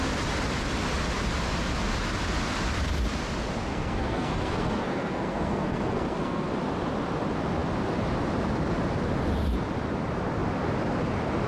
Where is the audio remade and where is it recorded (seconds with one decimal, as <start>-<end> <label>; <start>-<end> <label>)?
0.0-3.7 recorded; 3.7-6.5 remade; 6.5-11.5 recorded